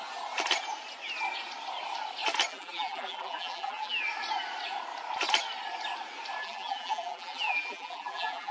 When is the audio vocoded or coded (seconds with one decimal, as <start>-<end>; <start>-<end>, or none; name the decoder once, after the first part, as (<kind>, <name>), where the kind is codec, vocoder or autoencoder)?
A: 2.5-4.0 (vocoder, BigVGAN v2); 6.4-8.5